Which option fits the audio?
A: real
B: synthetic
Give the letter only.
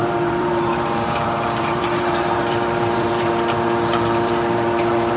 B